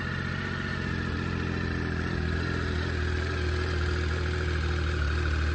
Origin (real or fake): real